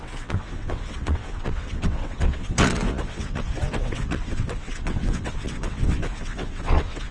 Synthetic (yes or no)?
yes